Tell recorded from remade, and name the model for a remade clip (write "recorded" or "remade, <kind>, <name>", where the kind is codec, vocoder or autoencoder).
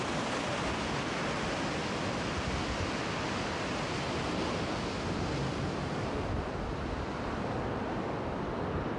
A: recorded